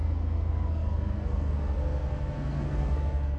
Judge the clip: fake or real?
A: fake